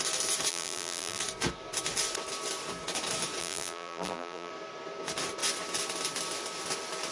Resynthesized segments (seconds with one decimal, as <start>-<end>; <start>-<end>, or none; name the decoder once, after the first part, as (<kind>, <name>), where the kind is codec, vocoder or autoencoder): 0.5-1.2 (vocoder, BigVGAN v2); 3.4-4.5